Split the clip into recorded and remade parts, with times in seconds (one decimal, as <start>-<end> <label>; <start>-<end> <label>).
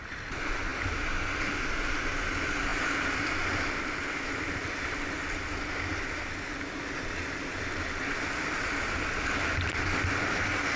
0.0-10.8 recorded